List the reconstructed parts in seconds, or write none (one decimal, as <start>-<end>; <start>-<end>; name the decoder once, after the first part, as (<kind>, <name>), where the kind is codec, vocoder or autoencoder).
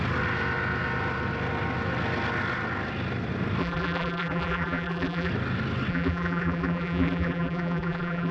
3.6-5.3 (vocoder, BigVGAN v2); 5.9-8.3